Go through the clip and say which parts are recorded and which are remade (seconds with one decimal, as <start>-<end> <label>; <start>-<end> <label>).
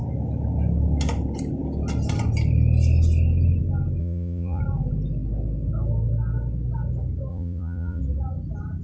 0.0-4.0 recorded; 4.0-4.6 remade; 4.6-7.3 recorded; 7.3-8.0 remade; 8.0-8.8 recorded